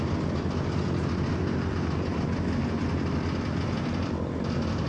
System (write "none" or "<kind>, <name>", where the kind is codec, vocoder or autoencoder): none